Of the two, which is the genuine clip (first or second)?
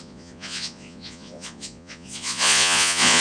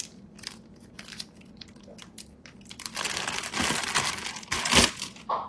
second